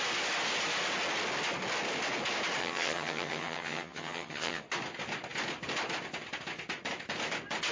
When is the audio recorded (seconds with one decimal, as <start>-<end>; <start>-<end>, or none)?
0.0-2.6; 4.6-7.7